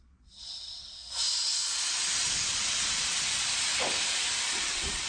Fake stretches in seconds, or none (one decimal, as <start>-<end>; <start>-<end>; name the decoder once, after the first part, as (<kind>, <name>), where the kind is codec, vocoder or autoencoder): 0.0-1.0 (vocoder, Vocos); 1.9-3.7; 4.5-5.1